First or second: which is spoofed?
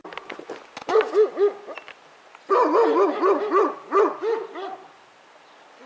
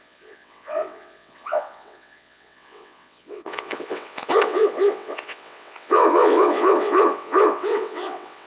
second